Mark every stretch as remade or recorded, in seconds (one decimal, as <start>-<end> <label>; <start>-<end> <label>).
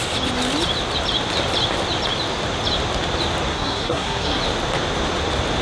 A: 0.0-3.5 recorded; 3.5-4.4 remade; 4.4-5.6 recorded